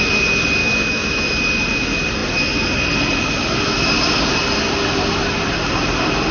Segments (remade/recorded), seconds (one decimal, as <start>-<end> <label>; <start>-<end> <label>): 0.0-0.6 recorded; 0.6-1.4 remade; 1.4-6.3 recorded